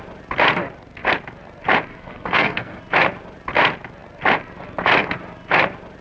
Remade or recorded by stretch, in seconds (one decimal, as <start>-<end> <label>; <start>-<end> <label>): 0.0-1.9 recorded; 1.9-2.8 remade; 2.8-6.0 recorded